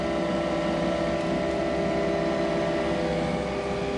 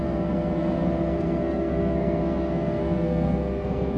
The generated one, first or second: second